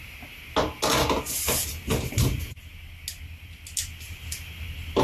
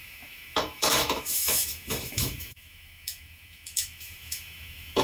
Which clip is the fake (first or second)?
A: second